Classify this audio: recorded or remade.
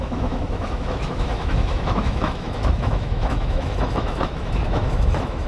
remade